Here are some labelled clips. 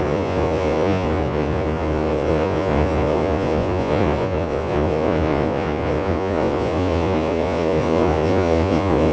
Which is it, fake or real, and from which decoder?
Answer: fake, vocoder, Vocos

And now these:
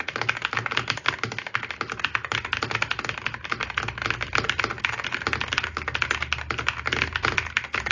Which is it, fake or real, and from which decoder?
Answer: real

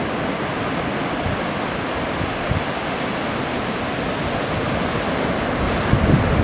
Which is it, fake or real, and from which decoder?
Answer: real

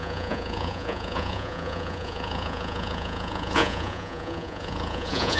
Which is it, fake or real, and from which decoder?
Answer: fake, vocoder, Vocos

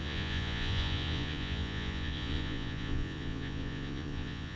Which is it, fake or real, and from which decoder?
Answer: fake, vocoder, Vocos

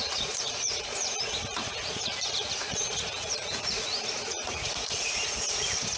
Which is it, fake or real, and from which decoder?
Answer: fake, vocoder, Vocos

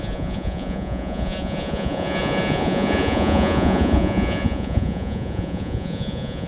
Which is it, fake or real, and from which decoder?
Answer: fake, vocoder, Vocos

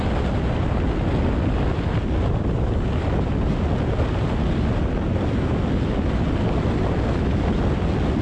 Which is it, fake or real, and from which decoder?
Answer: real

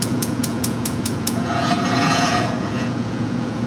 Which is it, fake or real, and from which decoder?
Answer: fake, vocoder, Vocos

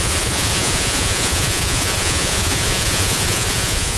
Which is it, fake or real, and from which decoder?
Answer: fake, vocoder, Vocos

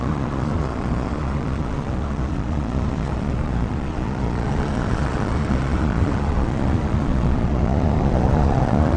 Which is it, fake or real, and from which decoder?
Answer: fake, vocoder, Vocos